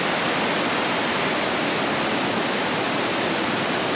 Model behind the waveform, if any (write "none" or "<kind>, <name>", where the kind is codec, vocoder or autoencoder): none